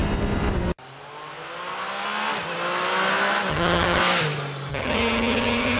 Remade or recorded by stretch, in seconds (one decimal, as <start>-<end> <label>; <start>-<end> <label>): 0.0-3.5 recorded; 3.5-4.0 remade; 4.0-4.7 recorded; 4.7-5.8 remade